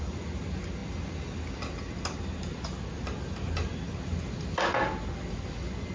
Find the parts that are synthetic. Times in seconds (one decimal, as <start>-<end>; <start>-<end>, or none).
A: none